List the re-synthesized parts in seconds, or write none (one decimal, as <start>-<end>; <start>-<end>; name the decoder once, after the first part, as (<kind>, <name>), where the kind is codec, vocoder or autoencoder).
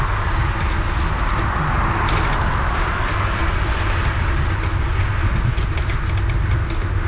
none